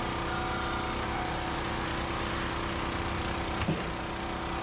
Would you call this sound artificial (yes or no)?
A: no